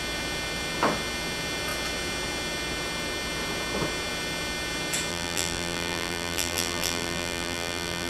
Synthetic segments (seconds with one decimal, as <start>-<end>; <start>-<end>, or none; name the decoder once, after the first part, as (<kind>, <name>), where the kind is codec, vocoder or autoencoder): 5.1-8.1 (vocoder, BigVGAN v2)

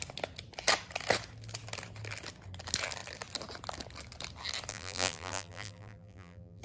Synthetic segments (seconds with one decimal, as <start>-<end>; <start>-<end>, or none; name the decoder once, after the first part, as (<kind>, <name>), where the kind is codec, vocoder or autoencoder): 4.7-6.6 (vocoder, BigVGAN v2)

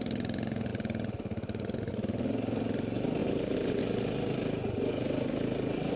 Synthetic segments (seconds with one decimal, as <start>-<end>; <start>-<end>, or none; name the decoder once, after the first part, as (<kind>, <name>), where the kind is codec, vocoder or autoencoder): 3.2-3.8 (vocoder, BigVGAN v2)

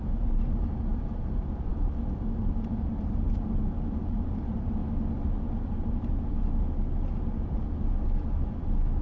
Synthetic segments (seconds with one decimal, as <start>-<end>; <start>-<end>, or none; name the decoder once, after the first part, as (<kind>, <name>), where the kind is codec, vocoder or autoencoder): 0.0-4.8 (vocoder, BigVGAN v2); 5.3-6.4